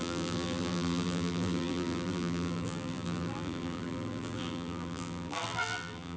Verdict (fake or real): fake